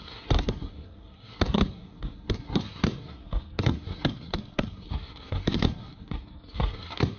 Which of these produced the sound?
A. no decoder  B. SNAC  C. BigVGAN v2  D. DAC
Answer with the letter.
B